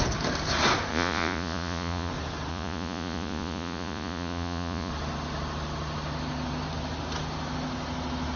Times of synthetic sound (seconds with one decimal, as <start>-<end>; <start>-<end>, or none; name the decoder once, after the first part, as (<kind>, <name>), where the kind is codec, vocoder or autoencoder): 0.9-2.1 (vocoder, Vocos); 2.5-4.9